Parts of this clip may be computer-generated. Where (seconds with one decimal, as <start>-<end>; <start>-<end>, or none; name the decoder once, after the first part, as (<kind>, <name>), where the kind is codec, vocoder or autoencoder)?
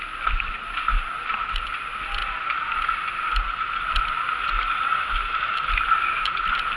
0.0-2.2 (vocoder, BigVGAN v2); 6.3-6.8